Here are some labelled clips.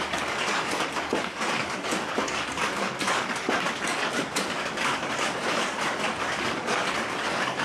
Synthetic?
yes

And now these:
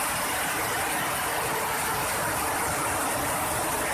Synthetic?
no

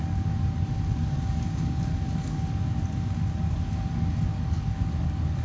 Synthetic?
yes